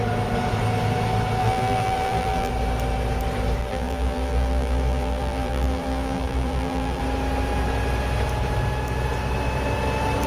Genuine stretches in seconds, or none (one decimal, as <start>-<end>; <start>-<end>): 0.0-1.4; 2.5-3.6; 7.0-10.3